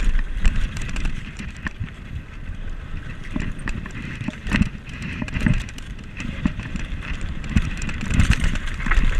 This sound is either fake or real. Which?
fake